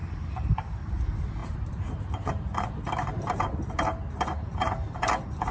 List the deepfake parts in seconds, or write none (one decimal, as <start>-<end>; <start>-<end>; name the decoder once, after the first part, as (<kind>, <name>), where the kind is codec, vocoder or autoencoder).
0.0-0.7 (vocoder, BigVGAN v2); 1.4-3.7